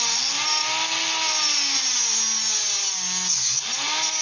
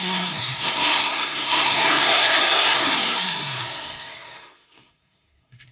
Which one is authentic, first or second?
first